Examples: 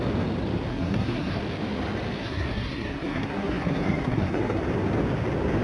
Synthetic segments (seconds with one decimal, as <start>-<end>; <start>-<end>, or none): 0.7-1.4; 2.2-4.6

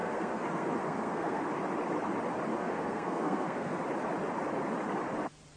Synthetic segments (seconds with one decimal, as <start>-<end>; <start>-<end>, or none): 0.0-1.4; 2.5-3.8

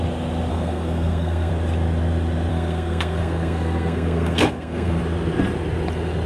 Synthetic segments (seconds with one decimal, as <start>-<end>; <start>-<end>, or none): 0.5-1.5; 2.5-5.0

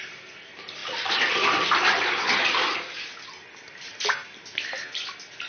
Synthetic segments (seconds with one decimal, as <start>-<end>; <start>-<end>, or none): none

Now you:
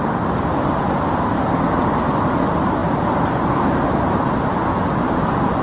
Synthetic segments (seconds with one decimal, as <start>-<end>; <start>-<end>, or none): none

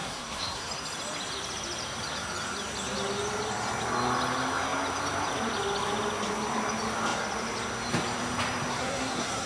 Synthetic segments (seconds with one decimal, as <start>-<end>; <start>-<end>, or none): 0.0-0.7; 8.7-9.5

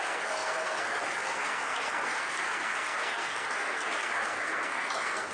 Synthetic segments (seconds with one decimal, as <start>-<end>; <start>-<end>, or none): 0.0-5.3